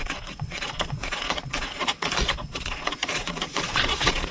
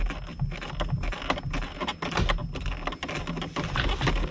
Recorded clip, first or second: second